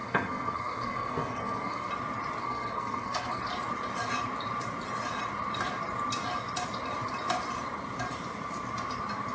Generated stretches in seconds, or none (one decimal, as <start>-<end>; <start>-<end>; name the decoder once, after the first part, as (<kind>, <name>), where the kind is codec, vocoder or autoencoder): 0.0-1.9 (codec, SNAC); 2.4-3.4